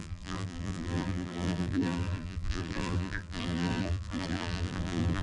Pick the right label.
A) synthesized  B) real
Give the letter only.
A